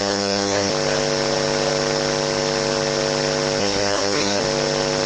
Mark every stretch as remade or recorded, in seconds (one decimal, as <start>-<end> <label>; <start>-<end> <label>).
0.0-0.7 remade; 0.7-3.6 recorded; 3.6-4.4 remade; 4.4-5.1 recorded